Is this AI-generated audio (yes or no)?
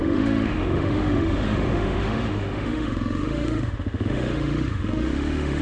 yes